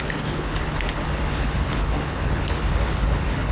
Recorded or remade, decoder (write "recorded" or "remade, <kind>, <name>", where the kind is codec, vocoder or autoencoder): remade, codec, HILCodec